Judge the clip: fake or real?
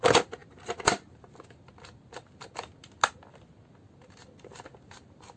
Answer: real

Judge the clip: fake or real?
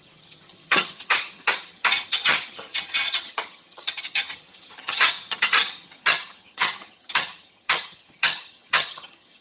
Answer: fake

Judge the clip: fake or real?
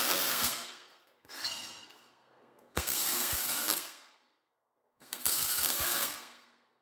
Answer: fake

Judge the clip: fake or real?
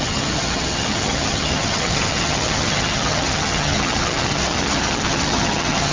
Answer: fake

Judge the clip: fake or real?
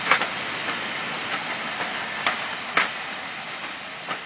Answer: real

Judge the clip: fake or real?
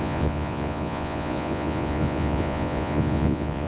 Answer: fake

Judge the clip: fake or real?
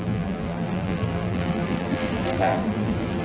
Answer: fake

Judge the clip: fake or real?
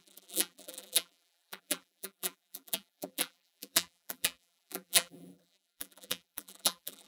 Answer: fake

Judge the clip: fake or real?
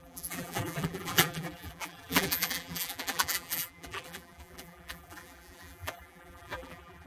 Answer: fake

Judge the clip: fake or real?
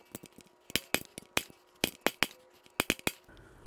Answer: real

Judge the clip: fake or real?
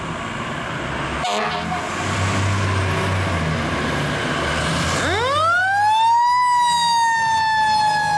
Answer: real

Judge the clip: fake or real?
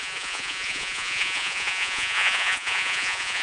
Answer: fake